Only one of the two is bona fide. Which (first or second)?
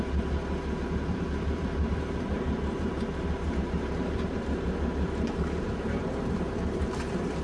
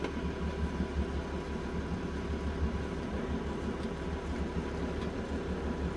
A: second